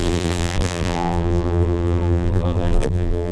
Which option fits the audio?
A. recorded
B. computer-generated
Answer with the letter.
B